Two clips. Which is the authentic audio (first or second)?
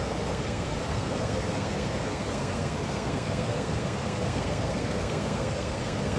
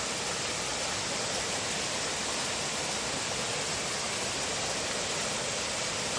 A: second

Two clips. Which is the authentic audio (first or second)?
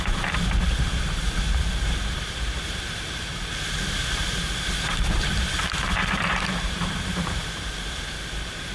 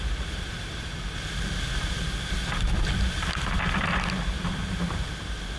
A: second